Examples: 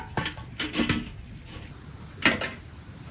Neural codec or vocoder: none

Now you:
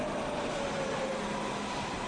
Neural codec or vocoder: none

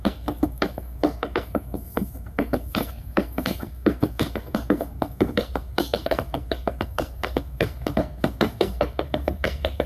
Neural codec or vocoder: codec, SNAC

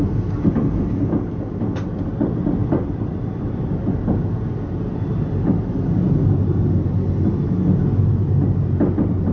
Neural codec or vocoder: none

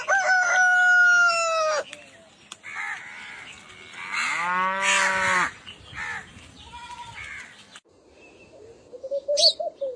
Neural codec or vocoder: none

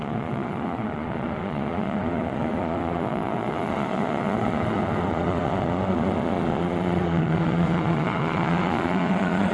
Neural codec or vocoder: vocoder, Vocos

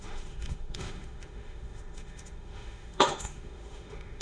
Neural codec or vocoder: autoencoder, DAC-VAE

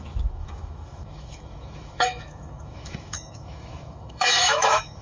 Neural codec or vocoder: autoencoder, DAC-VAE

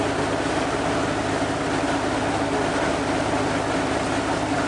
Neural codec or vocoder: none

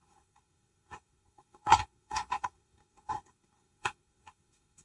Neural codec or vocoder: codec, SNAC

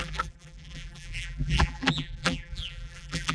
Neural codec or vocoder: vocoder, BigVGAN v2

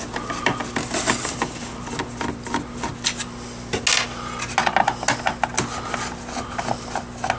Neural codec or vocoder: none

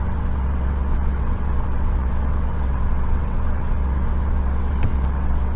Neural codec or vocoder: vocoder, WaveNeXt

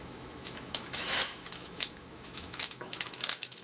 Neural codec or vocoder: autoencoder, DAC-VAE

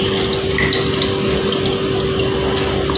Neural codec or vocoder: none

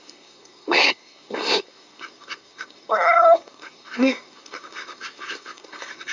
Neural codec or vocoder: codec, SNAC